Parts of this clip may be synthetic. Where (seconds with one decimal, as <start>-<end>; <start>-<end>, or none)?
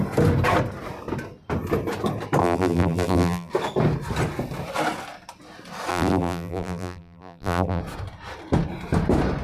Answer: 2.4-3.5; 5.9-7.8